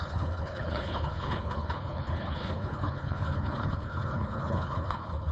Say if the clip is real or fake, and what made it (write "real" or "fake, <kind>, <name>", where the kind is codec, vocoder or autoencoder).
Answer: fake, codec, HILCodec